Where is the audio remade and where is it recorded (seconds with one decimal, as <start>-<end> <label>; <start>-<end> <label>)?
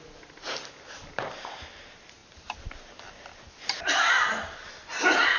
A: 0.0-5.4 recorded